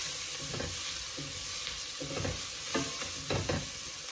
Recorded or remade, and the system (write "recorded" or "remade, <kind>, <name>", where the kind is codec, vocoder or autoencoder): recorded